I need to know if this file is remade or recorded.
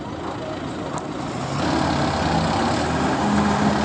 recorded